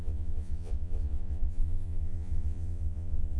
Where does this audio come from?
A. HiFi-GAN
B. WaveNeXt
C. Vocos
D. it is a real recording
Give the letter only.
C